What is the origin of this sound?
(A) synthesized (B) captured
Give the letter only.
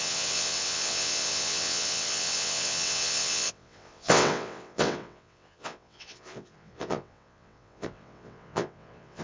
A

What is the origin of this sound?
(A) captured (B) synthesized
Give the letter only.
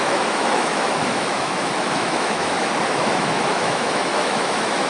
B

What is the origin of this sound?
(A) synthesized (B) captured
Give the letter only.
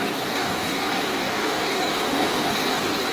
A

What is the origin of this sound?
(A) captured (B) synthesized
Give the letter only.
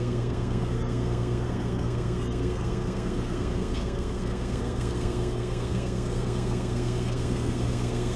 B